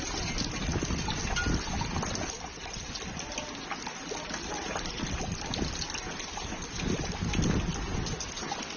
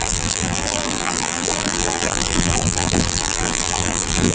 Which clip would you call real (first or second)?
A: first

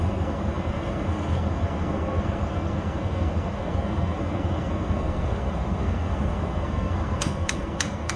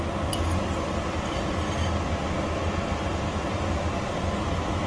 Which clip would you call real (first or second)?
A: second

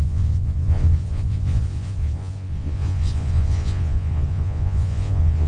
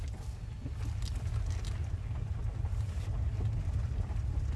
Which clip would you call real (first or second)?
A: second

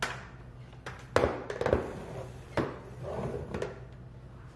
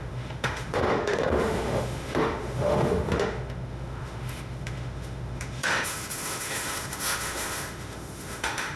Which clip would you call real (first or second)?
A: first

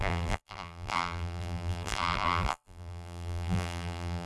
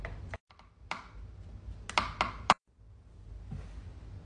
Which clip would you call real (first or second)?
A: second